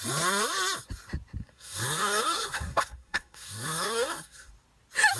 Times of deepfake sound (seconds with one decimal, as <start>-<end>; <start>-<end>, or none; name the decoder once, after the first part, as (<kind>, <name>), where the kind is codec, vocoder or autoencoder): 1.4-4.5 (codec, SNAC)